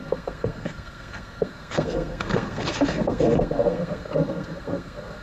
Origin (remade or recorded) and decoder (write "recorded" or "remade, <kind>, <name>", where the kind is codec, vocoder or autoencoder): remade, codec, SNAC